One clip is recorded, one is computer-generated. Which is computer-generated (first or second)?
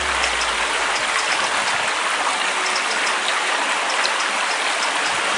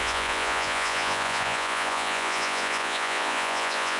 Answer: second